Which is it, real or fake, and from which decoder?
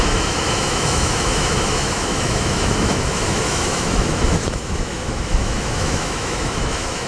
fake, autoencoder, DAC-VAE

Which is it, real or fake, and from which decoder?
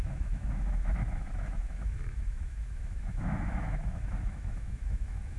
fake, autoencoder, DAC-VAE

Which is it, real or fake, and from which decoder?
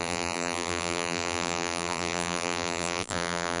fake, vocoder, BigVGAN v2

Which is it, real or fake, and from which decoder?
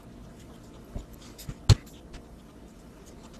real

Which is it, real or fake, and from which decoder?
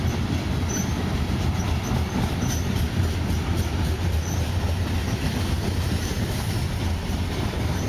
real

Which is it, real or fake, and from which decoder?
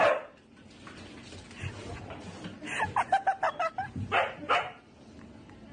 real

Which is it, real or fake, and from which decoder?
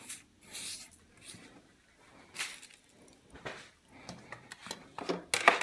real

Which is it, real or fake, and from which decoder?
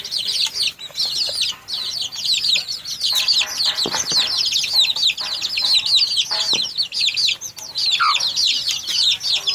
real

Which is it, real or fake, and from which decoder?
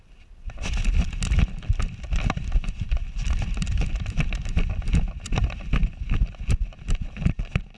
real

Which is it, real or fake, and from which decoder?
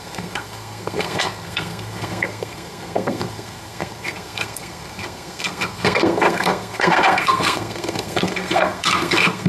fake, codec, SNAC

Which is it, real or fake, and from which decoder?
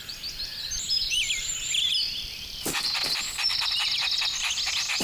fake, vocoder, BigVGAN v2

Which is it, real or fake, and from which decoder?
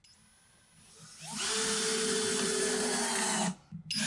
real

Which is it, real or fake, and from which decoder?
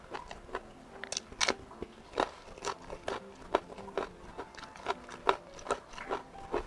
real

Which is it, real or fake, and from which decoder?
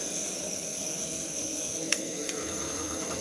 fake, codec, SNAC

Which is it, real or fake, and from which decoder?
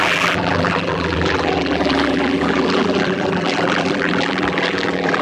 fake, vocoder, BigVGAN v2